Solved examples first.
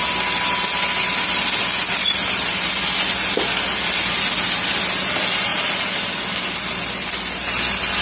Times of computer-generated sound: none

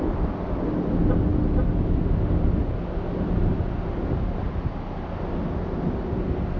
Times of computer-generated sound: none

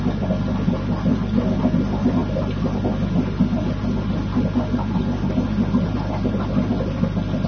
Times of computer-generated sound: none

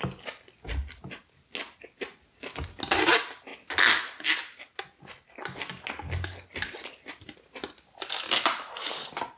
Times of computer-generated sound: none

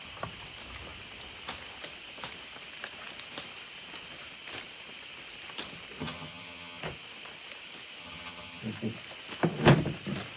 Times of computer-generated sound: 6.0-6.8; 8.0-8.6